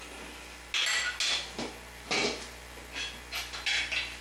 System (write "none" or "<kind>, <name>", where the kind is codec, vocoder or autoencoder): none